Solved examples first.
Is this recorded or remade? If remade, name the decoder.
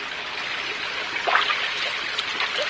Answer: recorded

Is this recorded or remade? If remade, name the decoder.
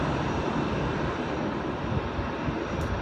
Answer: recorded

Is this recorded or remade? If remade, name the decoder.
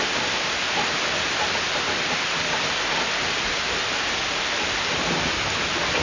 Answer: recorded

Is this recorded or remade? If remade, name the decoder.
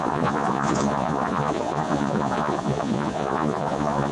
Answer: remade, vocoder, Vocos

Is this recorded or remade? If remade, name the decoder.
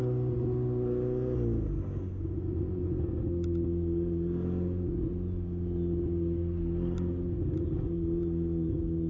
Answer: recorded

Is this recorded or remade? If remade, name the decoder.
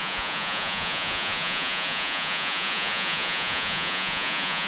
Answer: remade, vocoder, Vocos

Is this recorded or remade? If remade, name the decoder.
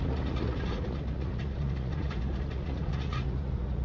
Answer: remade, vocoder, Vocos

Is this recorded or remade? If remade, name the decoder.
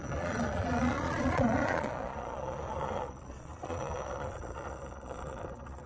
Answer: remade, vocoder, Vocos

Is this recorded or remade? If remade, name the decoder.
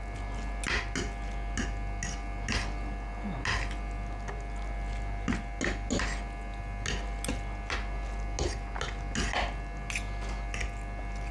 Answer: recorded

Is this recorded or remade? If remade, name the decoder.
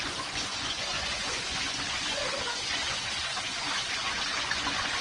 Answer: remade, vocoder, Vocos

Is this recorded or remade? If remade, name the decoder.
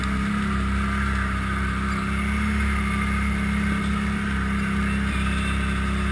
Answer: recorded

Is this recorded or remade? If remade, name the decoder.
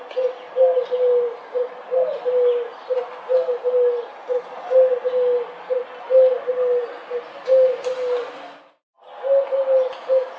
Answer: recorded